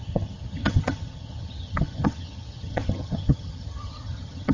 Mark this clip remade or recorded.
remade